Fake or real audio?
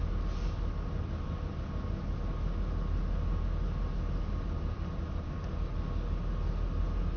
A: real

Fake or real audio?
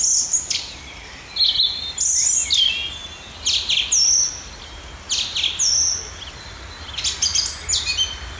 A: real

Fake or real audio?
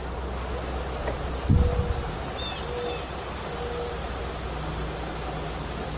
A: real